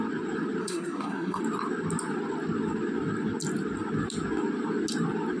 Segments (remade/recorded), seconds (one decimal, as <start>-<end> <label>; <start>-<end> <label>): 0.0-0.6 recorded; 0.6-1.4 remade; 1.4-5.4 recorded